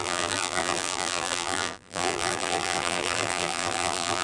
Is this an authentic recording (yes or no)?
no